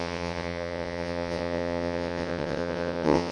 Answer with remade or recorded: remade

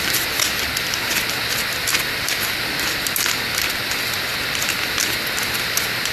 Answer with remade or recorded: recorded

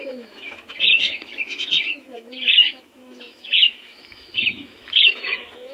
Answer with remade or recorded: remade